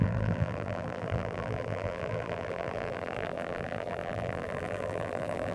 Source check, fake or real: fake